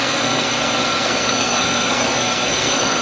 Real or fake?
fake